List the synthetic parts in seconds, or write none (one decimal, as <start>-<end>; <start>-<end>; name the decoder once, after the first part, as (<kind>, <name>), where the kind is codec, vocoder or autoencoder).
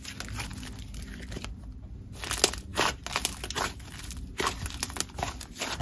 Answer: none